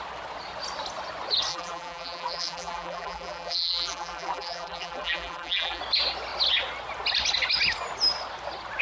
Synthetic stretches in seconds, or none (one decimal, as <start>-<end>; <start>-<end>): 1.5-5.8